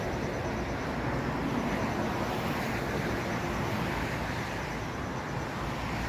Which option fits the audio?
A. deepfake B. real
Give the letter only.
B